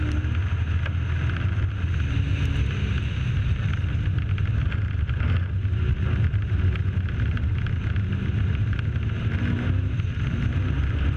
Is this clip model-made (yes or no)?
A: no